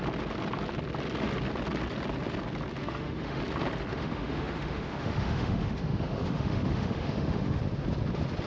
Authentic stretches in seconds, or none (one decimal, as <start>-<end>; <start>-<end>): 0.0-2.8; 3.4-3.9; 7.6-8.5